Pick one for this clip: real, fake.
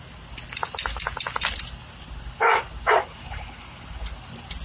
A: real